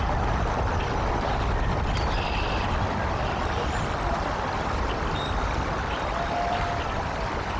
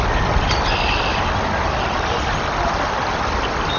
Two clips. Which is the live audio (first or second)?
second